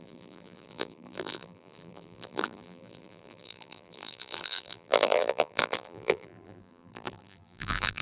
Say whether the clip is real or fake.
fake